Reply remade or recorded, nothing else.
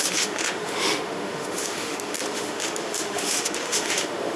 remade